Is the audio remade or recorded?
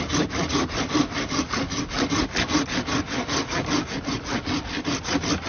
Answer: recorded